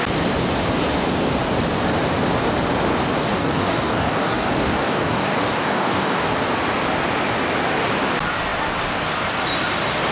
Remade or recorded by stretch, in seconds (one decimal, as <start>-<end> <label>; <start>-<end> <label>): 0.0-3.2 recorded; 3.2-6.2 remade; 6.2-10.1 recorded